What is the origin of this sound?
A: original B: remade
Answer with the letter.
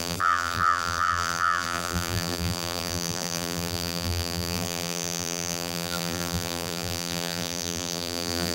B